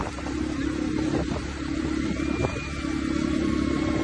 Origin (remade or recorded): recorded